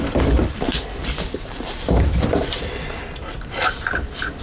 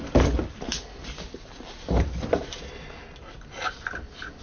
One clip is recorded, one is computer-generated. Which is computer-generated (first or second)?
first